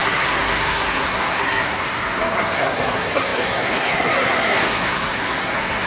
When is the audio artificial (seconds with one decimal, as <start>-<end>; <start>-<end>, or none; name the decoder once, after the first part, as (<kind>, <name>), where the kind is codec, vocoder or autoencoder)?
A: 0.0-5.9 (codec, SNAC)